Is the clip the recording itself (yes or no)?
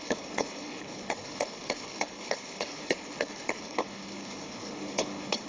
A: no